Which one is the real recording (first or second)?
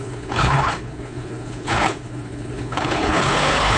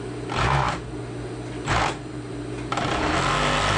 second